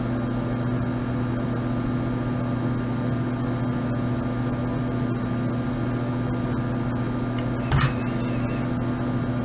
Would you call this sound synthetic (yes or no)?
no